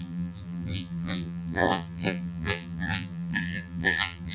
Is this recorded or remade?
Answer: remade